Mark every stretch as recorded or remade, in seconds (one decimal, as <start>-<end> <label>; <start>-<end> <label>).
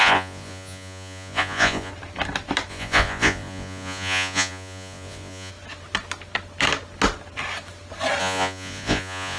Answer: 0.0-1.9 remade; 1.9-2.7 recorded; 2.7-5.5 remade; 5.5-8.2 recorded; 8.2-9.4 remade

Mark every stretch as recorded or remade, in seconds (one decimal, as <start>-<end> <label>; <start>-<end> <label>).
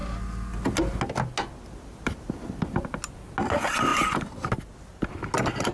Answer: 0.0-5.7 recorded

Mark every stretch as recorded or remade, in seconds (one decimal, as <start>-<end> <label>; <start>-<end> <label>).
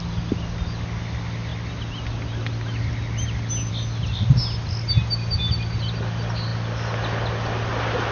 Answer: 0.0-8.1 recorded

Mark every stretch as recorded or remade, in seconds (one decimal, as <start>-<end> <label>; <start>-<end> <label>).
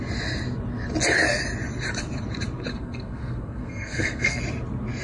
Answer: 0.0-2.7 recorded; 2.7-4.4 remade; 4.4-5.0 recorded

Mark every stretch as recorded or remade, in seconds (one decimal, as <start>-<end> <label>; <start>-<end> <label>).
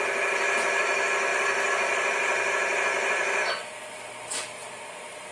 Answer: 0.0-1.3 recorded; 1.3-3.4 remade; 3.4-4.6 recorded; 4.6-5.3 remade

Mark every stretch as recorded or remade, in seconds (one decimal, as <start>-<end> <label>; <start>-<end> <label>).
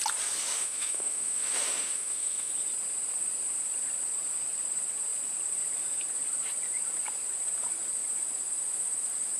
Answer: 0.0-0.4 recorded; 0.4-2.5 remade; 2.5-9.4 recorded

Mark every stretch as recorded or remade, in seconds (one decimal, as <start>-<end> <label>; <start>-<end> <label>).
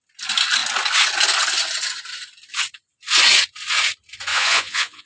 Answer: 0.0-4.3 recorded; 4.3-5.1 remade